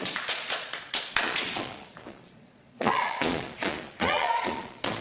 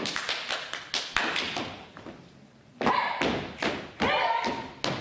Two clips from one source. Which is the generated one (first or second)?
first